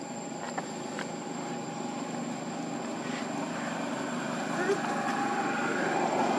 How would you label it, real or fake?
real